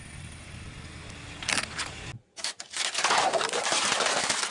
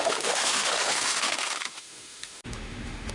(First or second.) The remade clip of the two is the second